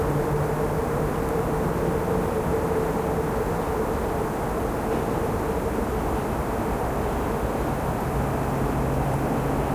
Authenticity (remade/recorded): recorded